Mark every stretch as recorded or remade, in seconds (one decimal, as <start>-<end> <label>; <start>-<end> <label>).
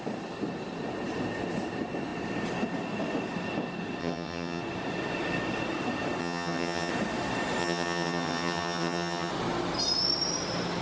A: 0.0-4.0 recorded; 4.0-4.6 remade; 4.6-6.2 recorded; 6.2-6.9 remade; 6.9-7.6 recorded; 7.6-9.3 remade; 9.3-10.8 recorded